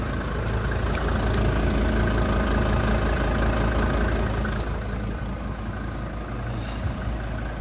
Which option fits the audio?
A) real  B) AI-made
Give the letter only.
A